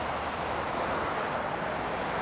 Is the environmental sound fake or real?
real